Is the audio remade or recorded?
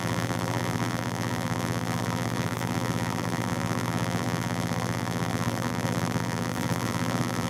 remade